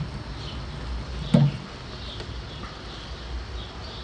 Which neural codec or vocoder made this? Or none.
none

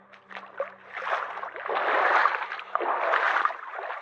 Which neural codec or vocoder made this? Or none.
none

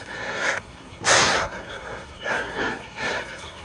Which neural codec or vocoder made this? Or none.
codec, SNAC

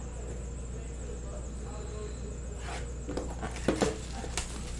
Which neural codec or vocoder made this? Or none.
none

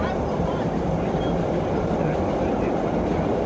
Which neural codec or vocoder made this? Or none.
vocoder, BigVGAN v2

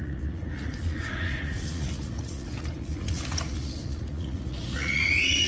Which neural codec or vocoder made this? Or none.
vocoder, Vocos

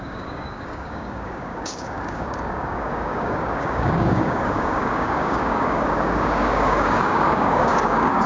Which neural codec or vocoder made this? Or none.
codec, DAC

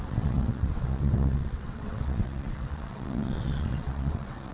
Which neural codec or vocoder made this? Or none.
vocoder, WaveNeXt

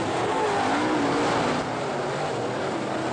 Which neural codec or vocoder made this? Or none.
none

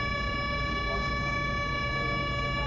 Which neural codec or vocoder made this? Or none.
codec, DAC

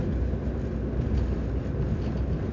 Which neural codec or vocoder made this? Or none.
none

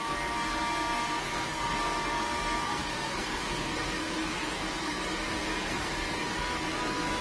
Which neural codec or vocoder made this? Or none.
codec, SNAC